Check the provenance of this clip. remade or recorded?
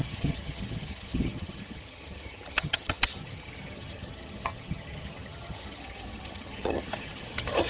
remade